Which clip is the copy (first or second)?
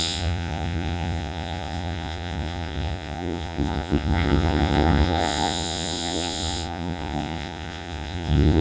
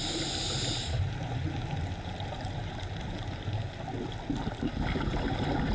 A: first